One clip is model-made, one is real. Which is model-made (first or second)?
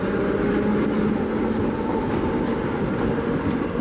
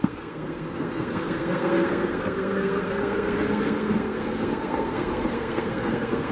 second